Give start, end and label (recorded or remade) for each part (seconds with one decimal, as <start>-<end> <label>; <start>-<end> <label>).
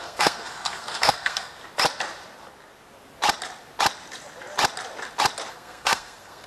0.0-1.6 remade; 1.6-5.5 recorded; 5.5-6.5 remade